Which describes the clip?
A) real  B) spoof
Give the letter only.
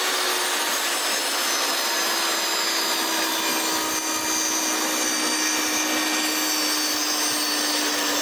A